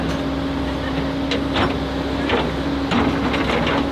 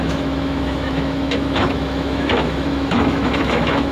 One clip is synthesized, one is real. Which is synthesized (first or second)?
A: second